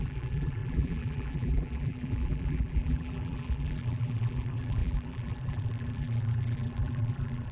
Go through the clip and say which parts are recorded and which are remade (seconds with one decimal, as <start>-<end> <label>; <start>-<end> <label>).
0.0-7.5 remade